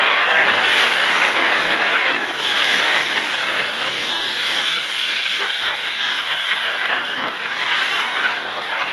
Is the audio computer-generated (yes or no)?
yes